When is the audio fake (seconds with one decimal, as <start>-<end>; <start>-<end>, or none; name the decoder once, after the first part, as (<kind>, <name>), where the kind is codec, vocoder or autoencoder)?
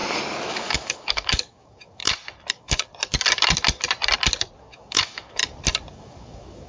0.5-2.0 (codec, DAC); 2.5-2.9; 4.6-5.4; 5.9-6.7